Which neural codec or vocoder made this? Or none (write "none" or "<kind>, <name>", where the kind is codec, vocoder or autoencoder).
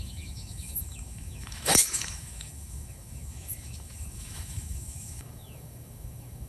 autoencoder, DAC-VAE